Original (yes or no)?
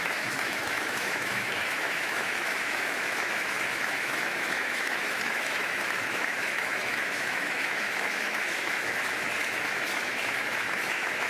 no